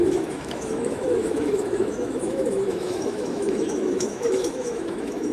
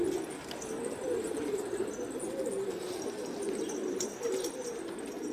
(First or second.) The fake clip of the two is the first